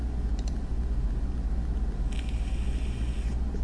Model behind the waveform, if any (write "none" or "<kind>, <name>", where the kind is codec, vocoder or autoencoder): none